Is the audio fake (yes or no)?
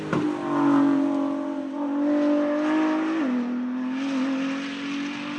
no